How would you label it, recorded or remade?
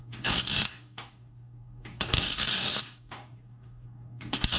remade